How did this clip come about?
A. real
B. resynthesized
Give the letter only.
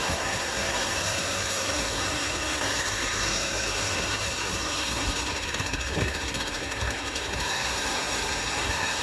B